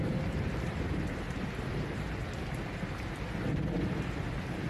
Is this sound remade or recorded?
recorded